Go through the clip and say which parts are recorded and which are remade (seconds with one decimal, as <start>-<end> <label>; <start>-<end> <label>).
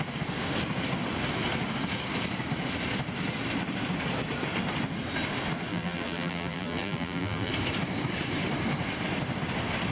0.0-5.7 recorded; 5.7-7.5 remade; 7.5-9.9 recorded